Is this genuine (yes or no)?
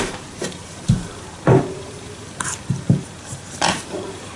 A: no